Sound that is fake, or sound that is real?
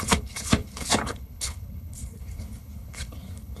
fake